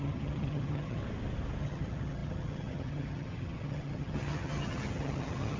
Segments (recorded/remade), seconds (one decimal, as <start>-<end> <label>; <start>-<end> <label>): 0.0-1.0 remade; 1.0-1.6 recorded; 1.6-5.6 remade